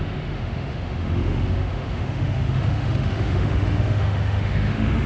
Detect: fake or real fake